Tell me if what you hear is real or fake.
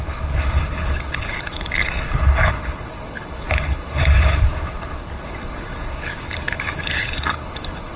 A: fake